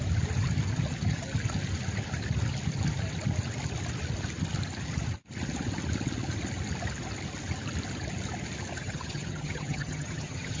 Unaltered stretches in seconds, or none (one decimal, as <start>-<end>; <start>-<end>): 0.0-8.8